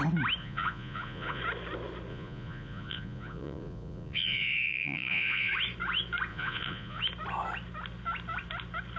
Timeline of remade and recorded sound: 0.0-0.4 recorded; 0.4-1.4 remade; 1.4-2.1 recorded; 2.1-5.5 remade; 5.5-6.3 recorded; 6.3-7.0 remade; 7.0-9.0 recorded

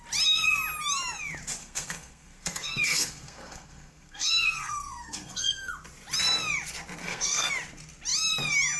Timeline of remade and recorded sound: 0.0-1.6 recorded; 1.6-5.7 remade; 5.7-7.0 recorded; 7.0-7.5 remade; 7.5-8.8 recorded